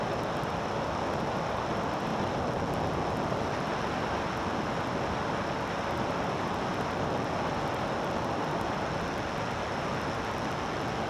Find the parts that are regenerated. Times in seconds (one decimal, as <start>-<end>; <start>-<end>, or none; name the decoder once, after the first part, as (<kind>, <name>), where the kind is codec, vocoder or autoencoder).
none